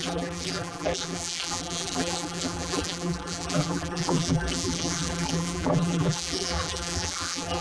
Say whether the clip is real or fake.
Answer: fake